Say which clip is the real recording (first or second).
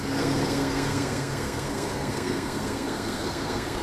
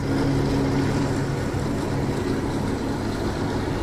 second